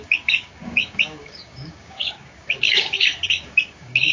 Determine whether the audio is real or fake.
fake